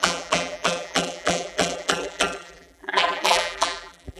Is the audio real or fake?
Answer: fake